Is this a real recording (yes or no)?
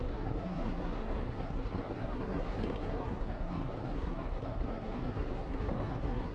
no